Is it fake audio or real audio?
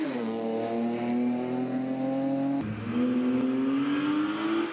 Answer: real